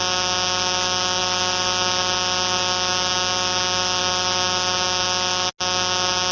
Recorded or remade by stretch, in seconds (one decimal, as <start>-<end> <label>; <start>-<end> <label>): 0.0-6.3 recorded